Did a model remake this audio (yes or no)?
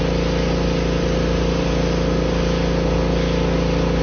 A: no